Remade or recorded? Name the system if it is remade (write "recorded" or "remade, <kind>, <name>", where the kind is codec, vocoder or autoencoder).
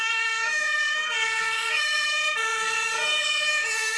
remade, codec, SNAC